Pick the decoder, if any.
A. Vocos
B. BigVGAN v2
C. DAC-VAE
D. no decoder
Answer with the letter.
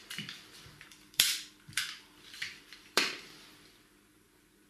B